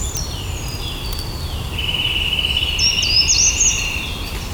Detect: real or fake real